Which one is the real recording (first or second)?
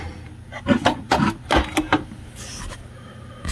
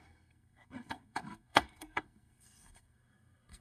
first